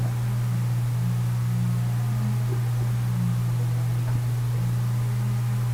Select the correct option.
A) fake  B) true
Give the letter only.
B